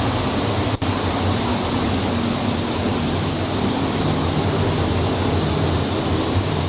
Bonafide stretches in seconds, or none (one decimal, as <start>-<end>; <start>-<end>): 0.0-6.7